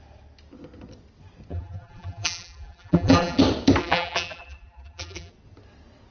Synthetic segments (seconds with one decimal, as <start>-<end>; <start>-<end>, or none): 1.5-3.4; 3.8-5.3